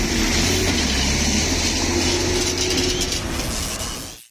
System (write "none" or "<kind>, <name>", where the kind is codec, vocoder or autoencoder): none